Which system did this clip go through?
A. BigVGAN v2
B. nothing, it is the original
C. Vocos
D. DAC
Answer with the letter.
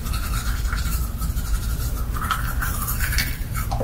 B